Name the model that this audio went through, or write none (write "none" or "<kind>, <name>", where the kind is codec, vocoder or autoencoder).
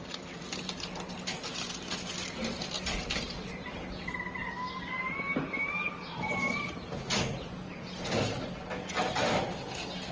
none